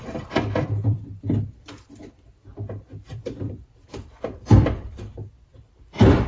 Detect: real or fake fake